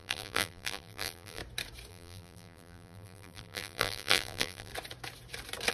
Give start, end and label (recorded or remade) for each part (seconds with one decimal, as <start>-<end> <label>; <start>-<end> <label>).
0.0-1.4 remade; 1.4-1.9 recorded; 1.9-4.7 remade; 4.7-5.7 recorded